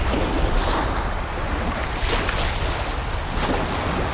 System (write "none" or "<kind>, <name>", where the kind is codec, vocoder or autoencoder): none